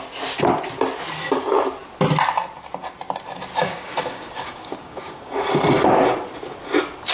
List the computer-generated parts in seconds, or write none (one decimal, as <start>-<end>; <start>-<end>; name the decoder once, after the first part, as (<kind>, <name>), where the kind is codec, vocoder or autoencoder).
3.5-5.5 (codec, DAC)